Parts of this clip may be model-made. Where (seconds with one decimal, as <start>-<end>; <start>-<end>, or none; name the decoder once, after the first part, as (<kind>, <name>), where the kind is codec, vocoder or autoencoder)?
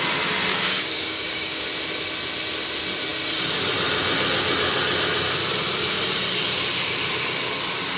0.5-1.6 (codec, DAC)